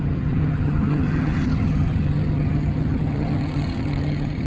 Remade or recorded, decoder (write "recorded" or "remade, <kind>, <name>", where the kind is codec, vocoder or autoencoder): remade, vocoder, HiFi-GAN